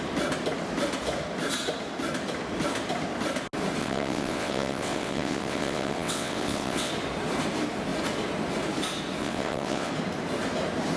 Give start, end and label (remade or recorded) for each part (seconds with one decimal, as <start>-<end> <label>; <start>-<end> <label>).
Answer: 0.0-3.8 recorded; 3.8-6.9 remade; 6.9-9.2 recorded; 9.2-9.9 remade; 9.9-11.0 recorded